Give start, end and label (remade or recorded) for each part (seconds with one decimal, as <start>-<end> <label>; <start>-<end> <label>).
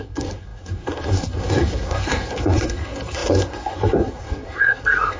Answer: 0.0-5.2 remade